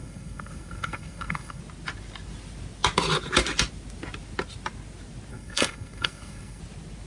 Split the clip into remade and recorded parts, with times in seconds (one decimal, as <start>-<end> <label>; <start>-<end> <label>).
0.0-1.6 remade; 1.6-5.3 recorded; 5.3-6.6 remade; 6.6-7.1 recorded